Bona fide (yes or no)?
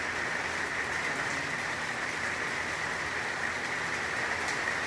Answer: yes